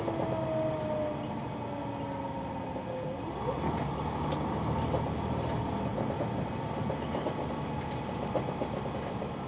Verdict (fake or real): real